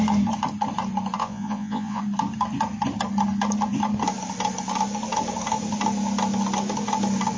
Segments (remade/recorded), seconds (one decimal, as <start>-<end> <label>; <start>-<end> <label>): 0.0-1.2 recorded; 1.2-2.0 remade; 2.0-7.4 recorded